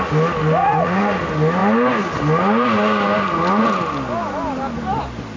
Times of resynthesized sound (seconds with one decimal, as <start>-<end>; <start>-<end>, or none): 0.6-1.2